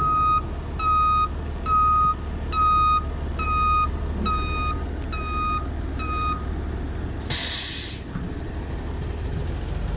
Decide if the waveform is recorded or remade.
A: recorded